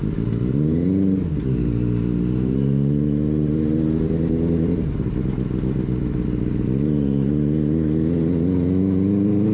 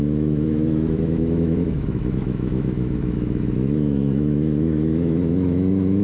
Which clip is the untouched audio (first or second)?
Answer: first